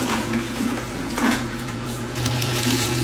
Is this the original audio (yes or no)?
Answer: no